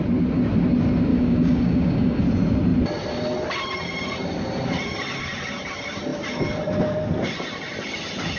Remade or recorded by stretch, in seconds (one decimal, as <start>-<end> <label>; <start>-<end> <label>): 0.0-1.1 recorded; 1.1-2.2 remade; 2.2-8.4 recorded